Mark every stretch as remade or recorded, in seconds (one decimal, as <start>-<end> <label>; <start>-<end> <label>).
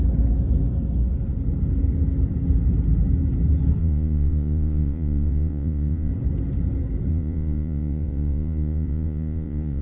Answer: 0.0-3.8 recorded; 3.8-6.1 remade; 6.1-7.1 recorded; 7.1-9.8 remade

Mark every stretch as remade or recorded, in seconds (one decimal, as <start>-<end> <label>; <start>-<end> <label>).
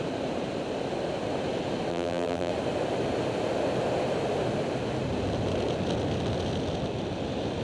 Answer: 0.0-1.9 recorded; 1.9-2.5 remade; 2.5-7.6 recorded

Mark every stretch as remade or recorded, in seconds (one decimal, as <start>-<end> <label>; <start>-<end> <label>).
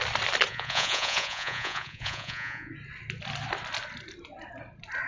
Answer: 0.0-0.5 recorded; 0.5-2.7 remade; 2.7-5.1 recorded